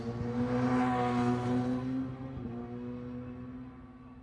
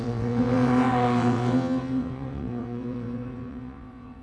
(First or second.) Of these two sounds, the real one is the first